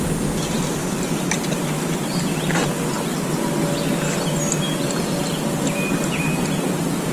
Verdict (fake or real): real